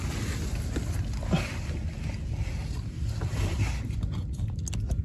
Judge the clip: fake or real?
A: real